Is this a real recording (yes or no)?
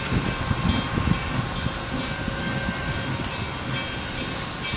yes